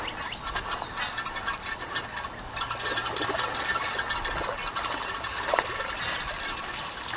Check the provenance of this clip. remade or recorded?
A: recorded